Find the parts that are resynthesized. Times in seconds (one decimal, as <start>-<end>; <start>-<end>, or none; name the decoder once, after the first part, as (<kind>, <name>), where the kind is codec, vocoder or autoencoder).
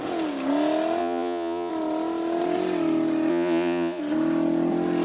1.0-1.7 (vocoder, Vocos); 3.3-4.0